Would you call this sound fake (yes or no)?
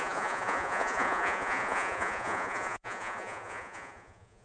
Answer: yes